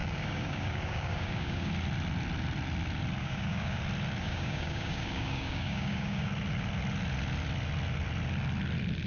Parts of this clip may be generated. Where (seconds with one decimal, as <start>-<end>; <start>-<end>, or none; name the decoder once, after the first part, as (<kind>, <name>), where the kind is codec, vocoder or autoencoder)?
0.0-1.7 (codec, DAC); 3.2-3.8; 4.2-6.3